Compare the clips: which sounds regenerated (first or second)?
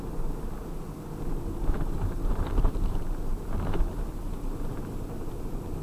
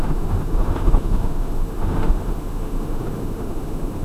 second